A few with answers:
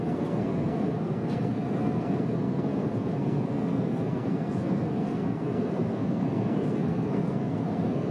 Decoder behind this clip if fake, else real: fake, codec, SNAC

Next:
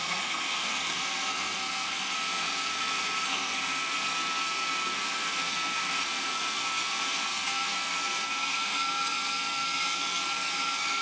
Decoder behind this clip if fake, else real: fake, codec, SNAC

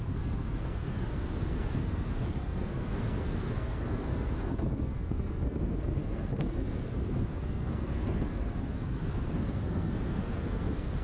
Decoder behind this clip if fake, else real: fake, codec, SNAC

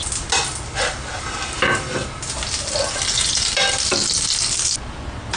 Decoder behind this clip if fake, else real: real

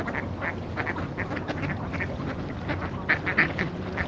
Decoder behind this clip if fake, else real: real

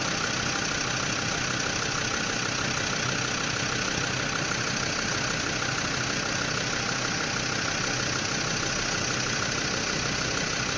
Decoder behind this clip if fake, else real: real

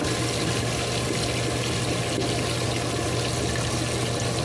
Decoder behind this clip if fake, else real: real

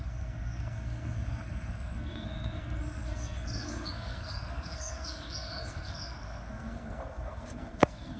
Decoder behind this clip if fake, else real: fake, codec, SNAC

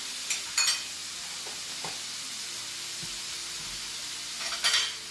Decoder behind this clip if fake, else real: real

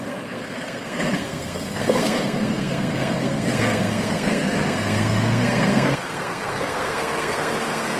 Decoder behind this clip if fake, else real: fake, codec, SNAC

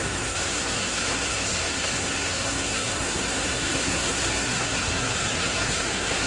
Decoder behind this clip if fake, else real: fake, codec, SNAC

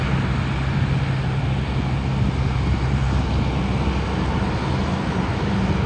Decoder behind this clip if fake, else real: real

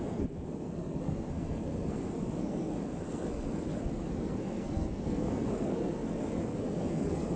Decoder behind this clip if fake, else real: fake, codec, SNAC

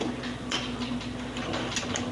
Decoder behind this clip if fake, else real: real